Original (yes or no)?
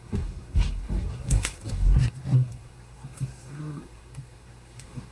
no